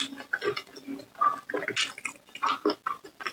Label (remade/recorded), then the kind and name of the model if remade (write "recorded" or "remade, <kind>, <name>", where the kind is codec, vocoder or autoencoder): recorded